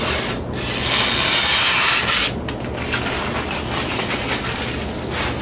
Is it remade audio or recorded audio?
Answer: recorded